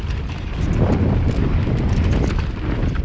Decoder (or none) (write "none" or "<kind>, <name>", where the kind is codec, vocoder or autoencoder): none